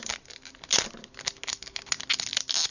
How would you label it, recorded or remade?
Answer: recorded